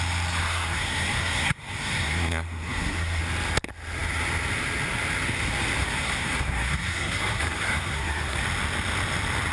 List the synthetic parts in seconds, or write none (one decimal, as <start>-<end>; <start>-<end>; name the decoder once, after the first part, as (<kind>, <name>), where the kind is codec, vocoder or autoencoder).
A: 0.4-3.2 (codec, SNAC); 5.8-8.4